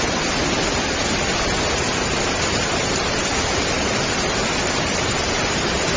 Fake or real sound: real